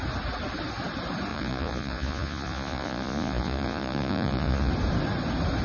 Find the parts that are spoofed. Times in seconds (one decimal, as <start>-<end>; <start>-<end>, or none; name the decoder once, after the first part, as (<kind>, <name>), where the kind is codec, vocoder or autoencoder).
1.3-4.7 (vocoder, Vocos)